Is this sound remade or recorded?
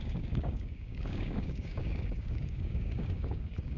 remade